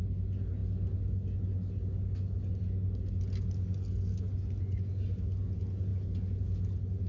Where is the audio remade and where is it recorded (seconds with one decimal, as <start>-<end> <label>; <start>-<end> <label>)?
0.0-7.1 recorded